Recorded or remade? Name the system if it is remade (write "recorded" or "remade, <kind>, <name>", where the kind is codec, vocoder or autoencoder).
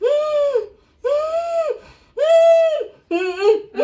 recorded